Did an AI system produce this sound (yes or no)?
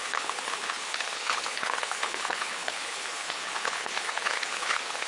yes